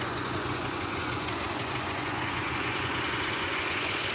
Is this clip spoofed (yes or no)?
yes